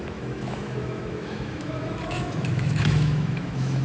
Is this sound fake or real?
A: fake